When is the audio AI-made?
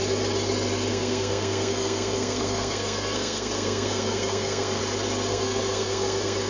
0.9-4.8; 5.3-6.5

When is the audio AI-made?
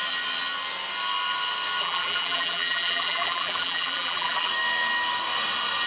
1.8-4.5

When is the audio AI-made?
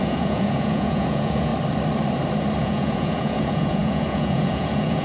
0.0-1.5; 2.6-5.0